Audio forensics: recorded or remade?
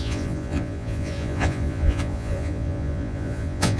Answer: remade